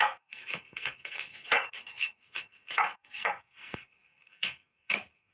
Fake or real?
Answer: fake